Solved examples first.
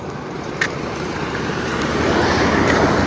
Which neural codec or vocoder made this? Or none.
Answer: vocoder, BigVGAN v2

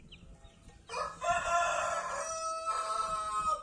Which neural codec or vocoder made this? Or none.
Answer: none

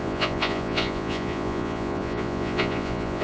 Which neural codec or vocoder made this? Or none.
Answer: vocoder, Vocos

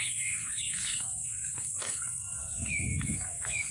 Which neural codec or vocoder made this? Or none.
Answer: codec, SNAC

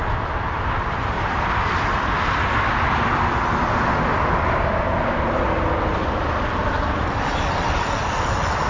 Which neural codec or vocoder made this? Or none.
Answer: none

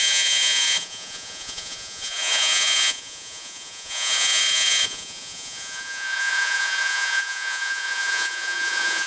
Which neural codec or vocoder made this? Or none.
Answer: vocoder, Vocos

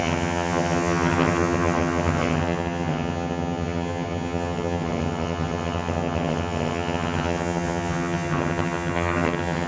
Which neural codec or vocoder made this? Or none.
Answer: vocoder, HiFi-GAN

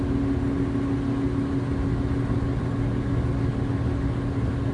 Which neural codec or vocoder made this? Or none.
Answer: none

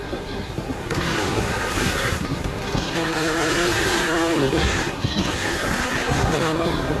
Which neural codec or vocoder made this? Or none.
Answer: codec, SNAC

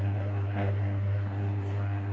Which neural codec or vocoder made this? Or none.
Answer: codec, SNAC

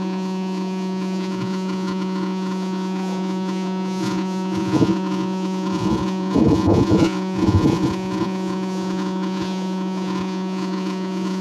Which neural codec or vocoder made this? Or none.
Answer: vocoder, Vocos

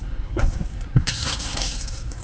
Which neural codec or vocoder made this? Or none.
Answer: codec, SNAC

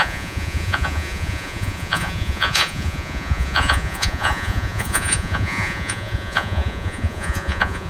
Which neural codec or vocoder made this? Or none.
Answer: vocoder, Vocos